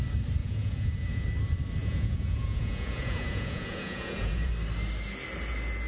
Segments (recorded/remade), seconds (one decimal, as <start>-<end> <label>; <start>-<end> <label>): 0.0-0.4 recorded; 0.4-1.3 remade; 1.3-1.8 recorded; 1.8-4.5 remade; 4.5-5.9 recorded